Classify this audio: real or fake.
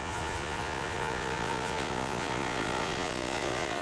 fake